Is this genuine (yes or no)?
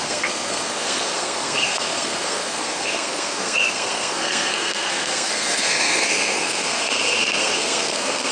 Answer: no